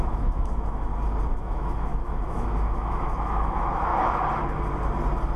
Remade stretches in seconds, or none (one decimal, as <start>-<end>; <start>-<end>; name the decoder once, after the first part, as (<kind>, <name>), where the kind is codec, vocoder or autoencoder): 0.0-0.9 (autoencoder, DAC-VAE); 1.4-3.9